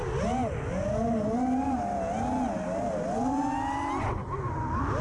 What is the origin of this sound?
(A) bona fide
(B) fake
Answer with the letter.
A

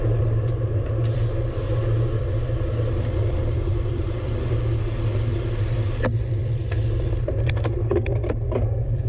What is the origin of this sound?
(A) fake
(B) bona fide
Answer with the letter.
B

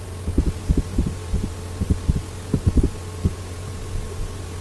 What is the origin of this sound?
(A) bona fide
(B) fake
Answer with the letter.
A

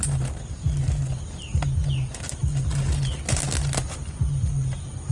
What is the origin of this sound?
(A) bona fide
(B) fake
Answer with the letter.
A